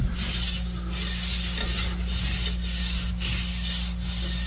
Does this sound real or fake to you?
real